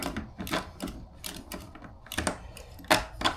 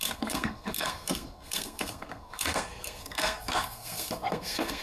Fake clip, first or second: second